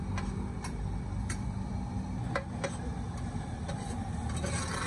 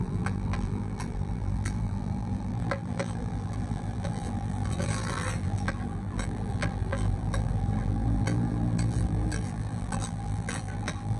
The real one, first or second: first